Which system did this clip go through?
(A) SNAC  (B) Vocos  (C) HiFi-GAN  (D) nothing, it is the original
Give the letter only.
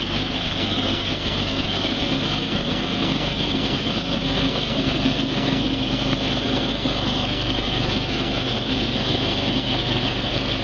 A